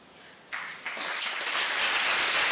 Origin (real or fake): real